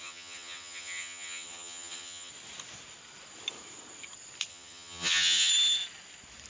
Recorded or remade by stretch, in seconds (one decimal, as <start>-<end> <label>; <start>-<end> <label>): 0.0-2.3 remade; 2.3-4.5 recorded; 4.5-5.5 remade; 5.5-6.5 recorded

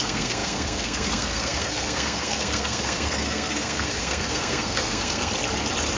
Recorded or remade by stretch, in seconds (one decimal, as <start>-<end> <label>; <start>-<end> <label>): 0.0-5.3 remade; 5.3-6.0 recorded

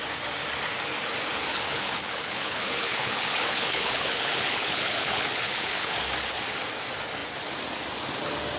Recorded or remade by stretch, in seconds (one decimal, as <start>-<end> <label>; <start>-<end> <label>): 0.0-1.5 recorded; 1.5-5.9 remade; 5.9-8.6 recorded

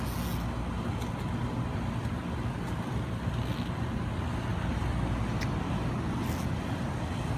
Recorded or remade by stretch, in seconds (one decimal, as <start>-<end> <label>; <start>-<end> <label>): 0.0-7.4 recorded